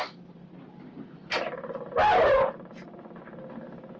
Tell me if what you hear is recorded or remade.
recorded